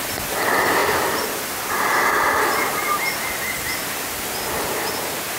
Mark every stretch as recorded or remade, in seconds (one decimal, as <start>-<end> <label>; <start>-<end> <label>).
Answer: 0.0-2.8 recorded; 2.8-4.1 remade; 4.1-5.4 recorded